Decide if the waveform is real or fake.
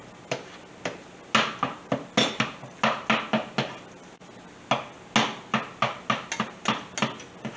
real